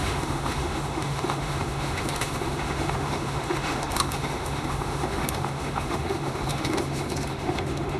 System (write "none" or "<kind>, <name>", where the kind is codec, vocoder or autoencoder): autoencoder, DAC-VAE